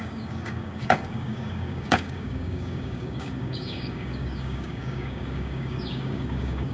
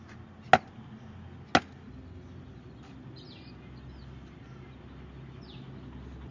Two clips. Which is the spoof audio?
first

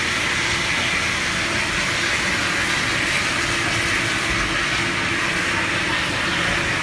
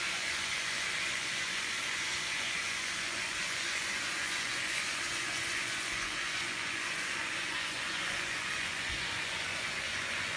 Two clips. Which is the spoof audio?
second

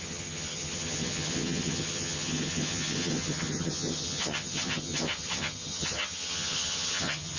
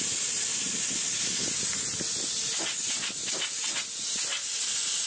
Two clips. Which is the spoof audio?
first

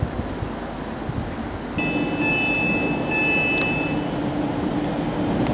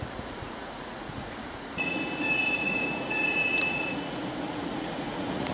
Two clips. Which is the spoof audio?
second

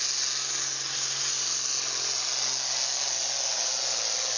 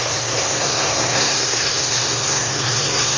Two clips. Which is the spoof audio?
second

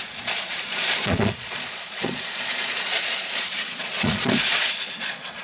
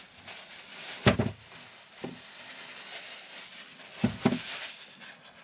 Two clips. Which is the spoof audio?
first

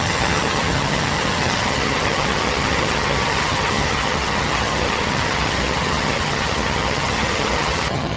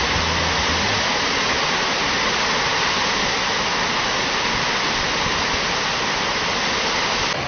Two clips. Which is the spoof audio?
first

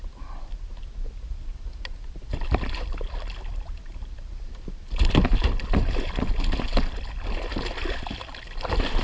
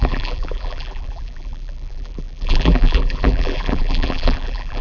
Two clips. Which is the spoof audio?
second